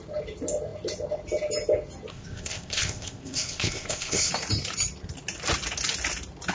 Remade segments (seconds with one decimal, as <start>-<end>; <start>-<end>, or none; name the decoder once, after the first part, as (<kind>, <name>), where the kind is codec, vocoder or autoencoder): 2.1-4.3 (codec, ZipCodec)